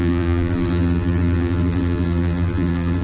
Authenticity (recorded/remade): remade